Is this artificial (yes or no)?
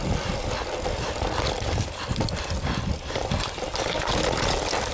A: no